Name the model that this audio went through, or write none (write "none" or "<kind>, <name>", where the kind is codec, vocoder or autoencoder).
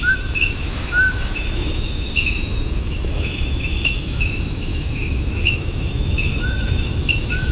autoencoder, DAC-VAE